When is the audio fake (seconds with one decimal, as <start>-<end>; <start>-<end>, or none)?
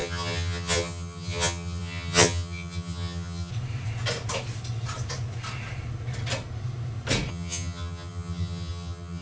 0.0-3.5; 7.3-9.2